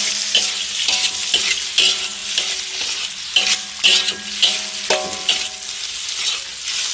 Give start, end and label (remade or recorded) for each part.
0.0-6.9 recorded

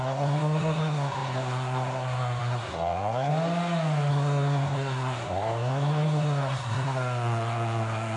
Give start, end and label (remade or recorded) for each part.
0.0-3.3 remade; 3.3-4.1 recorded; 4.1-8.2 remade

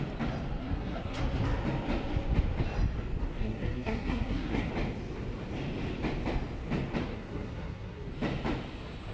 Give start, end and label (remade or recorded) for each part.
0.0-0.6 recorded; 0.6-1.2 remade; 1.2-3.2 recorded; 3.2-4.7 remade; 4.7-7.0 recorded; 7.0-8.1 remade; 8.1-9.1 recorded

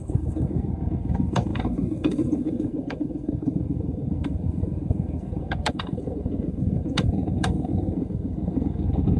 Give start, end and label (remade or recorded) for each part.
0.0-9.2 remade